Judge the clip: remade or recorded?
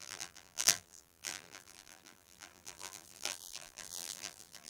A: remade